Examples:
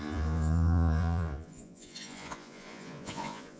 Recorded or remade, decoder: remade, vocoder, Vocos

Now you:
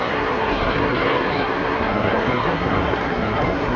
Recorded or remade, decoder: remade, codec, SNAC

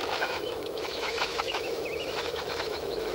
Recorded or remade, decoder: remade, autoencoder, DAC-VAE